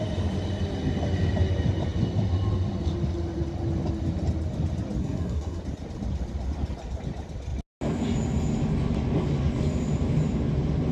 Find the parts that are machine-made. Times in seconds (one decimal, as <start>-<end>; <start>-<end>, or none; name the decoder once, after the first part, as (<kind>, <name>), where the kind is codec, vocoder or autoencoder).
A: 5.0-5.6 (codec, SNAC)